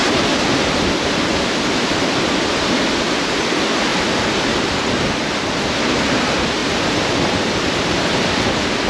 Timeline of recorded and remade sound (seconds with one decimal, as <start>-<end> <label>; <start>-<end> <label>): 0.0-2.8 remade; 2.8-3.9 recorded; 3.9-4.7 remade; 4.7-6.6 recorded; 6.6-7.7 remade; 7.7-8.9 recorded